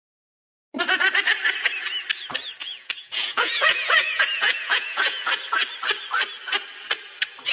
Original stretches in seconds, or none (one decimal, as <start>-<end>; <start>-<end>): 0.0-2.6; 5.3-7.5